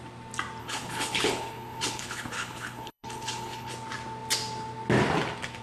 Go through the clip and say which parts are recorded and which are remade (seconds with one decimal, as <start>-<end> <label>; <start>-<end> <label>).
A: 0.0-0.6 recorded; 0.6-3.7 remade; 3.7-5.6 recorded